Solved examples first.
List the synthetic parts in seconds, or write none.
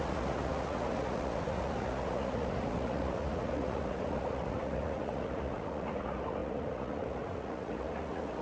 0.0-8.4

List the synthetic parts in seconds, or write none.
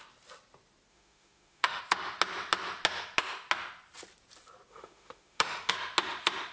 0.9-1.8; 4.7-5.7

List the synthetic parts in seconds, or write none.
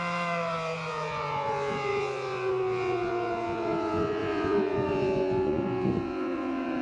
0.0-6.8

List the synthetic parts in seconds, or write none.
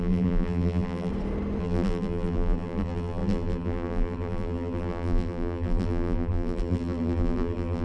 0.0-1.1; 1.6-7.8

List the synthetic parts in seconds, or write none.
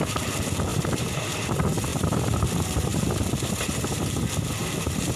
0.7-1.3; 1.9-2.4